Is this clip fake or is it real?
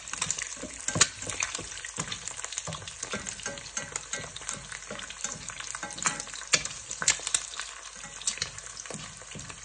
real